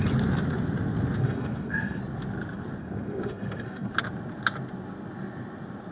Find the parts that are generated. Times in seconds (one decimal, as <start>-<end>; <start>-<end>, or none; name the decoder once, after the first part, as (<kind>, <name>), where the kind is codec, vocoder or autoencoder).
1.2-2.0 (codec, SNAC); 2.8-3.9